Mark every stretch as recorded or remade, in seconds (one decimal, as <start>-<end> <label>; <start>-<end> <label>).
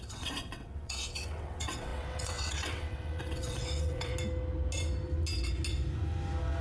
0.0-4.1 remade; 4.1-6.6 recorded